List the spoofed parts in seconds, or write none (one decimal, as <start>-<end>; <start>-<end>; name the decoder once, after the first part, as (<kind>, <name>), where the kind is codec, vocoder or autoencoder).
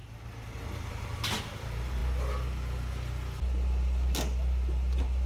1.4-2.0 (vocoder, BigVGAN v2)